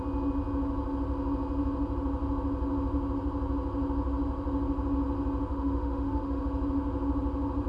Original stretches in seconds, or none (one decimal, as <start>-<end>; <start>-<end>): 0.0-5.5; 6.4-7.7